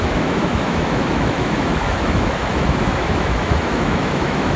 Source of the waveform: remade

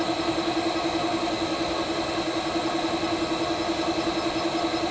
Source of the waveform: recorded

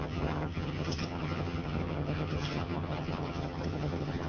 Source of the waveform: remade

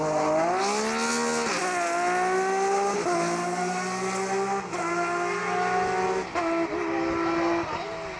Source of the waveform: recorded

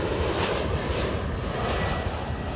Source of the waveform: recorded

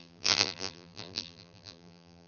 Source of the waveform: remade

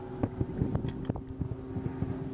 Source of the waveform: recorded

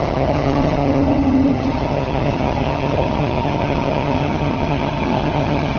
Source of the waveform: remade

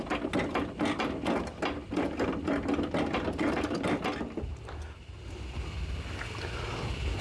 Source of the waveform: recorded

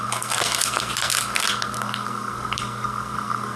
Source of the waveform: remade